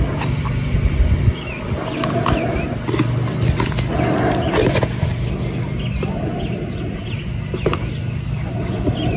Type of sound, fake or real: real